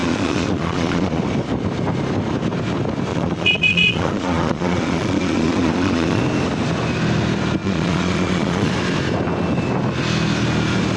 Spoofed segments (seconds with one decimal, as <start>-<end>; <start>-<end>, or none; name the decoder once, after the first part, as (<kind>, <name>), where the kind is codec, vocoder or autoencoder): 0.0-1.2 (vocoder, Vocos); 3.1-6.2; 7.6-8.7